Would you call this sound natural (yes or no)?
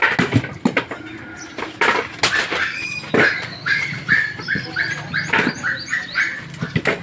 yes